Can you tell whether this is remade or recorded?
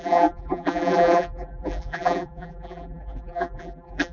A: remade